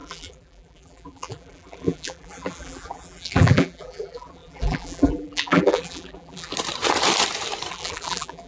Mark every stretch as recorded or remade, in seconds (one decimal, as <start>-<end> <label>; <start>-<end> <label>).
0.0-6.5 remade; 6.5-7.7 recorded; 7.7-8.5 remade